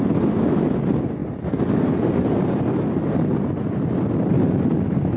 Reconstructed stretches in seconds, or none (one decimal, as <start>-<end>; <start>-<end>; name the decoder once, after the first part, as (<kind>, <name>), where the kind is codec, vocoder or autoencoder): none